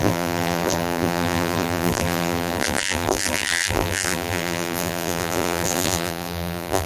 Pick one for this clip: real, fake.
fake